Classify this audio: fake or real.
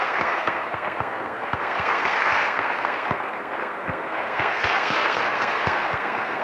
fake